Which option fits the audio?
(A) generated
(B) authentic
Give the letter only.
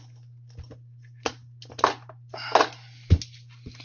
B